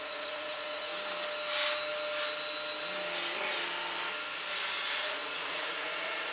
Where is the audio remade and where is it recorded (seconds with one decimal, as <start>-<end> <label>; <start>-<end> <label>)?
0.0-0.9 remade; 0.9-4.7 recorded; 4.7-6.3 remade